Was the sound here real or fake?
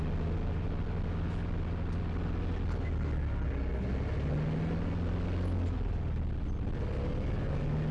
real